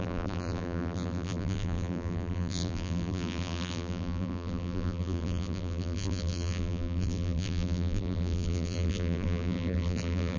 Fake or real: fake